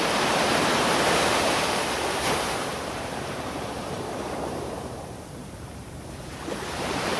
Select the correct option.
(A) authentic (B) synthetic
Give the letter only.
B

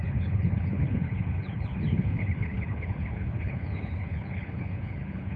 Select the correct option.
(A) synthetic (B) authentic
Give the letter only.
A